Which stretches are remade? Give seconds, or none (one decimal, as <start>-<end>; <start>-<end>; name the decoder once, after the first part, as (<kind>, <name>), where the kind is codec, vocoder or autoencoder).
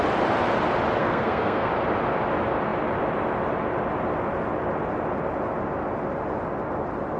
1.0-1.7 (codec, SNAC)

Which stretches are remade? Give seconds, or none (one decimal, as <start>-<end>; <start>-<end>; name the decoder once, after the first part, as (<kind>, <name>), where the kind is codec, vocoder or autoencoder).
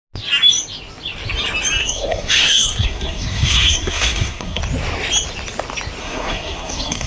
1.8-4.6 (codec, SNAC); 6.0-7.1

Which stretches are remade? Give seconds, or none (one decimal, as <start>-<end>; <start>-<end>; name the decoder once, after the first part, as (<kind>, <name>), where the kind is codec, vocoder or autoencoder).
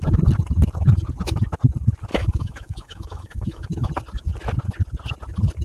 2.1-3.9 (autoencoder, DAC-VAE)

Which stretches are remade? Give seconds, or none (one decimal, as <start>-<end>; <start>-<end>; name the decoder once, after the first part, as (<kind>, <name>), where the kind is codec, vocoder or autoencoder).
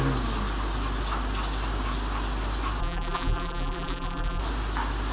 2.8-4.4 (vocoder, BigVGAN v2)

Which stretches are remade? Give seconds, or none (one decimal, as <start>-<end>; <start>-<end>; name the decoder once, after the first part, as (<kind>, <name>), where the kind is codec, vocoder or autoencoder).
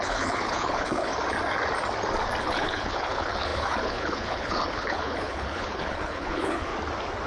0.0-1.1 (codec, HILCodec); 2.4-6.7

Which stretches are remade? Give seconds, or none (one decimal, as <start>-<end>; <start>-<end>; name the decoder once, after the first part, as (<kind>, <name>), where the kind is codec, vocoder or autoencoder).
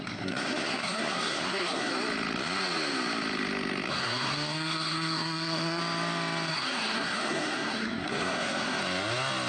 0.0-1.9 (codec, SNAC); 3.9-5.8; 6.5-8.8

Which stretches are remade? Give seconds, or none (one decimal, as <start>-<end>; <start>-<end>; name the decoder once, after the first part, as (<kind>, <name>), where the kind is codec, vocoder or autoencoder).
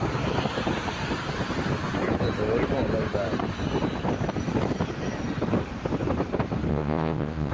6.7-7.5 (vocoder, Vocos)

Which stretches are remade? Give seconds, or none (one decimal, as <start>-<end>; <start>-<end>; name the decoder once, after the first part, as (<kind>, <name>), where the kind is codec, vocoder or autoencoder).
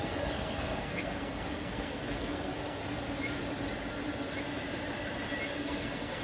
0.0-2.8 (codec, SNAC); 5.6-6.2